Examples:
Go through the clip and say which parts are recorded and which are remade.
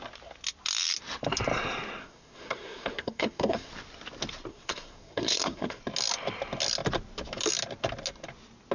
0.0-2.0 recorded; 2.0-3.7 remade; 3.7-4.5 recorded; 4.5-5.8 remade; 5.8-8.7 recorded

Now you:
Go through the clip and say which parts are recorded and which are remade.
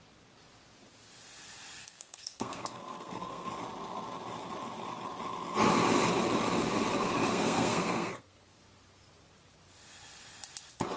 0.0-1.8 recorded; 1.8-3.5 remade; 3.5-7.3 recorded; 7.3-8.6 remade; 8.6-11.0 recorded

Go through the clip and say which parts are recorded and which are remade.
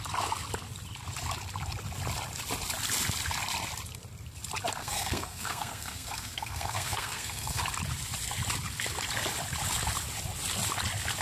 0.0-4.8 recorded; 4.8-7.6 remade; 7.6-11.2 recorded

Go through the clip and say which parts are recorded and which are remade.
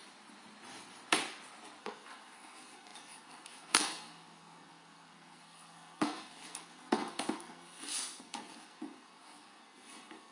0.0-1.8 recorded; 1.8-10.3 remade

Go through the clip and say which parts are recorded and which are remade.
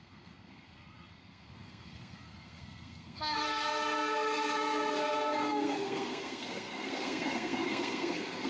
0.0-8.5 remade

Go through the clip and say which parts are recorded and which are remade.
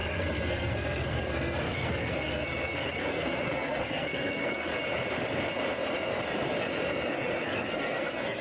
0.0-4.7 remade; 4.7-7.1 recorded; 7.1-8.4 remade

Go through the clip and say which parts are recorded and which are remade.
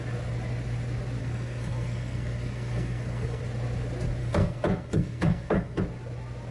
0.0-1.2 recorded; 1.2-3.4 remade; 3.4-4.2 recorded; 4.2-5.8 remade; 5.8-6.5 recorded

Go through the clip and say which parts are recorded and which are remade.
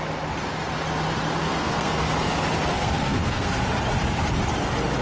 0.0-1.4 recorded; 1.4-2.0 remade; 2.0-2.7 recorded; 2.7-3.6 remade; 3.6-5.0 recorded